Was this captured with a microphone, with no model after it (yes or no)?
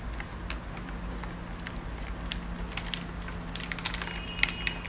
yes